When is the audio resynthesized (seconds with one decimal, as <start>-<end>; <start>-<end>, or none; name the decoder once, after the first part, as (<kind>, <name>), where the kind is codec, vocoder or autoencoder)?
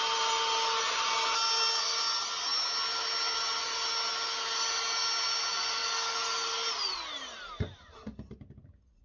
none